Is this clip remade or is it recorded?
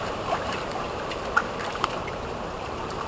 remade